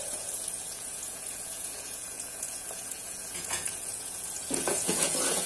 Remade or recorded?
remade